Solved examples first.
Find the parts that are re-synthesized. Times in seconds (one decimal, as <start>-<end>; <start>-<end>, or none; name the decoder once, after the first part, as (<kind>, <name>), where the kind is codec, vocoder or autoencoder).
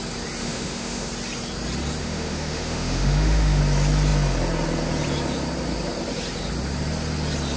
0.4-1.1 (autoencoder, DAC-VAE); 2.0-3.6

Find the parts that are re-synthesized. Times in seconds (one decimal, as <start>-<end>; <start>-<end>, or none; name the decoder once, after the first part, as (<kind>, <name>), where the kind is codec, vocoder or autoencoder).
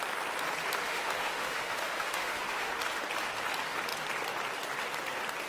0.8-2.7 (autoencoder, DAC-VAE)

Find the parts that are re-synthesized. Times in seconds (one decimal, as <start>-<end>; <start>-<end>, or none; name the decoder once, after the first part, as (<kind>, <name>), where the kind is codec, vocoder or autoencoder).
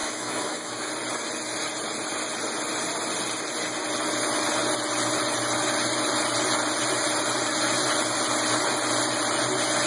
0.0-0.9 (autoencoder, DAC-VAE)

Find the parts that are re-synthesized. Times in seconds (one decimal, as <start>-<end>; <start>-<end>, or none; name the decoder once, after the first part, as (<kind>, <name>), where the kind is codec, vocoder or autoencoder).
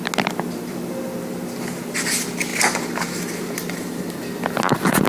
none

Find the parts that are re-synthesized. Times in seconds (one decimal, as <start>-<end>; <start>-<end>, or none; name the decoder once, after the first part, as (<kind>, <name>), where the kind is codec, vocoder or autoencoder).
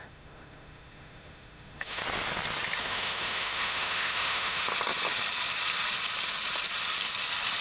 0.0-2.0 (autoencoder, DAC-VAE); 2.8-4.7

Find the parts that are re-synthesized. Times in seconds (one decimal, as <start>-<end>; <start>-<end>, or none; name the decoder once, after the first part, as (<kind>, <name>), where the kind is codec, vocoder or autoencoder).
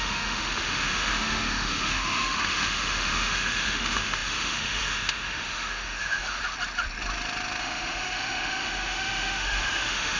0.0-6.4 (autoencoder, DAC-VAE); 7.6-10.2